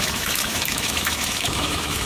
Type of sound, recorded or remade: remade